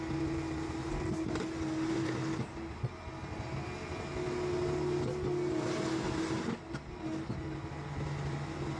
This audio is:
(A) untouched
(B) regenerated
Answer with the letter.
A